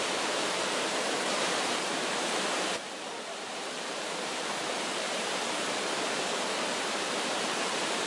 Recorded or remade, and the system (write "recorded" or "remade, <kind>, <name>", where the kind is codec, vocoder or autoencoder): remade, vocoder, BigVGAN v2